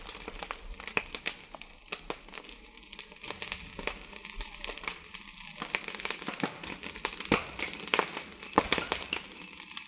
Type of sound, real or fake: real